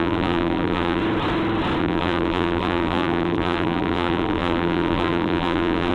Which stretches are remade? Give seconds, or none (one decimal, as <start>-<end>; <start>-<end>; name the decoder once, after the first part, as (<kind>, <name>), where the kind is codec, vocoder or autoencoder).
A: 0.0-1.0 (vocoder, BigVGAN v2); 1.8-5.9